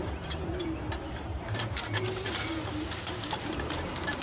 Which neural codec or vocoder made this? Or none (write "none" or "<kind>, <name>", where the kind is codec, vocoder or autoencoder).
vocoder, BigVGAN v2